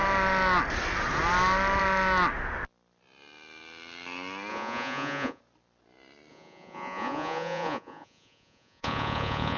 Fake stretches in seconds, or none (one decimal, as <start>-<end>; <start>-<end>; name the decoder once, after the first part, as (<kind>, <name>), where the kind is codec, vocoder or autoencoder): 4.5-5.4 (vocoder, Vocos); 6.3-9.6